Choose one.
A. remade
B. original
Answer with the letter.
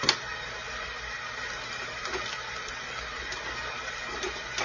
B